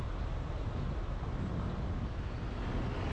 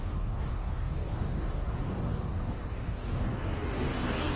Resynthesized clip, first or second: second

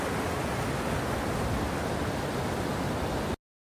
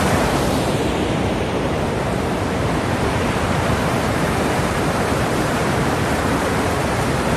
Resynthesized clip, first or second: second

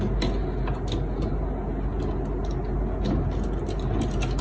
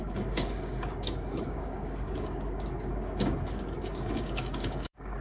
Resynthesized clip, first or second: second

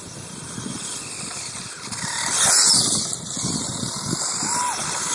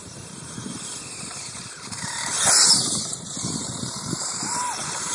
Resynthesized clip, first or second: second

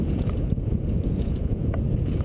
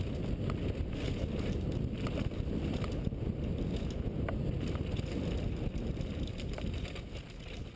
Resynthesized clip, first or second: first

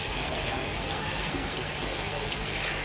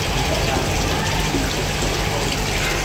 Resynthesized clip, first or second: first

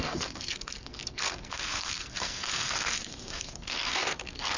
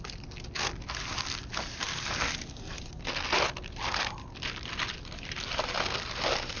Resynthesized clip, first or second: first